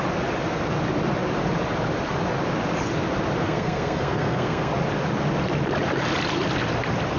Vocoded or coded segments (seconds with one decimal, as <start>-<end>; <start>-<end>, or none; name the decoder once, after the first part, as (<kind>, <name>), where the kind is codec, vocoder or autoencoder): 3.4-4.7 (codec, SNAC)